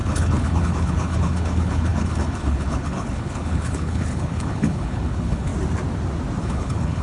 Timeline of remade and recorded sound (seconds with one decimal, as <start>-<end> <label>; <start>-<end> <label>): 0.0-5.5 remade; 5.5-6.4 recorded; 6.4-7.0 remade